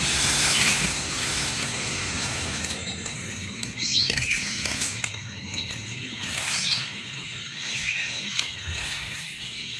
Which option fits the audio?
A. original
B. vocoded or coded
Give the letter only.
B